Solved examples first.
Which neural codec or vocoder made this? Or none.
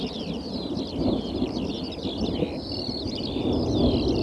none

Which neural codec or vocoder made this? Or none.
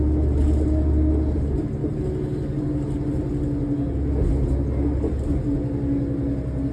none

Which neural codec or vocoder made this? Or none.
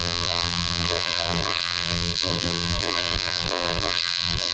vocoder, BigVGAN v2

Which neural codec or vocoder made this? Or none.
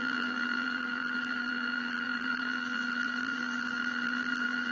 vocoder, BigVGAN v2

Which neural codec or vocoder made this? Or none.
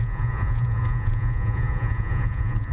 vocoder, Vocos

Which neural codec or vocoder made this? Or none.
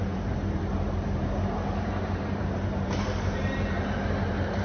vocoder, BigVGAN v2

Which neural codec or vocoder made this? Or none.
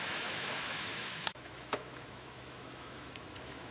autoencoder, DAC-VAE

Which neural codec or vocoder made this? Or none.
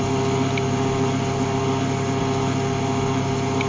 none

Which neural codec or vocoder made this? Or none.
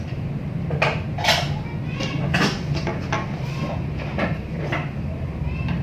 none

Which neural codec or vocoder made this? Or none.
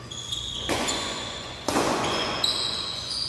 vocoder, Vocos